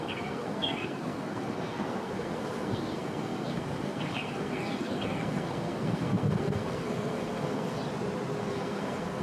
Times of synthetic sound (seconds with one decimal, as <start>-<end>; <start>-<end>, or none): 0.0-7.8; 8.4-9.2